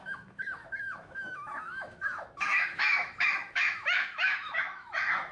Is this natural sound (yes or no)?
no